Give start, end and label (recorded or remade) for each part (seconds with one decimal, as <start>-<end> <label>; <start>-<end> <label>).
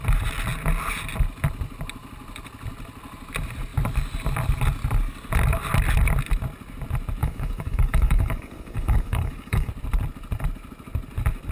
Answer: 0.0-7.2 recorded; 7.2-9.7 remade; 9.7-11.5 recorded